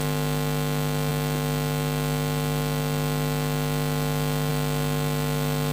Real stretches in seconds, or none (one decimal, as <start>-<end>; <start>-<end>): 0.0-5.7